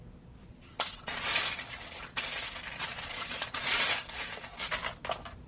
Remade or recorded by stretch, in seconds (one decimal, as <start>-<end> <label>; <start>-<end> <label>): 0.0-0.4 recorded; 0.4-1.4 remade; 1.4-2.9 recorded; 2.9-3.9 remade; 3.9-5.5 recorded